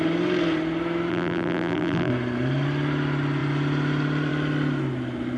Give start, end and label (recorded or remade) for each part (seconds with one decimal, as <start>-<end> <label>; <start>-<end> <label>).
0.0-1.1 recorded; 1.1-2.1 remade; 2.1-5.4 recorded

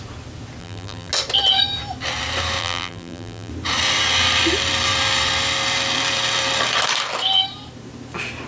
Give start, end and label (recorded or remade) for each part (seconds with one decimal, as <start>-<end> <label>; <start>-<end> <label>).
0.0-0.6 recorded; 0.6-1.1 remade; 1.1-2.6 recorded; 2.6-3.5 remade; 3.5-8.5 recorded

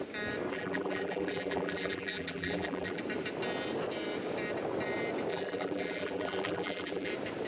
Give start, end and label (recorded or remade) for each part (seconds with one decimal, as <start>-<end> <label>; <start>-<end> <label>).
0.0-0.5 recorded; 0.5-3.0 remade; 3.0-5.3 recorded; 5.3-7.1 remade; 7.1-7.5 recorded